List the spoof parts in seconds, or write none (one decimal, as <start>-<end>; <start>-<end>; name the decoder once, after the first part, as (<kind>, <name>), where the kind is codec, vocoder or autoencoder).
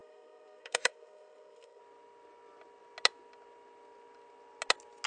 0.0-1.8 (codec, SNAC)